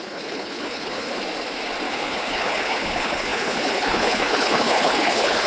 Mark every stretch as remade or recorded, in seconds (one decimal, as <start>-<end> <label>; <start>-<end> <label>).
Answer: 0.0-1.2 remade; 1.2-1.9 recorded; 1.9-5.5 remade